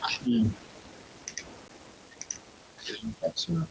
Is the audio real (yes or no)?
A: yes